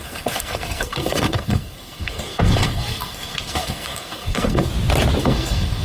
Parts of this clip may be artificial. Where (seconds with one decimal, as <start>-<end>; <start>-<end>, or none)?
0.0-4.7; 5.2-5.8